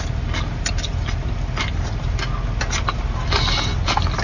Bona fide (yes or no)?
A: yes